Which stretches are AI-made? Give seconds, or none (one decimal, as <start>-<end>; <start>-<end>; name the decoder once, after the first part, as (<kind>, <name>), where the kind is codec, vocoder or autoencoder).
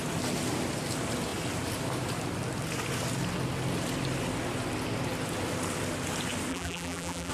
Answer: 6.5-7.3 (vocoder, BigVGAN v2)